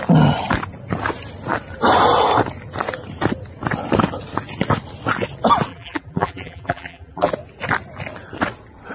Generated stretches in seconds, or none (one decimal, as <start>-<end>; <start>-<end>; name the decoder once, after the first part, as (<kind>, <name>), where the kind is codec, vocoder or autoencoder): 5.7-7.3 (vocoder, BigVGAN v2)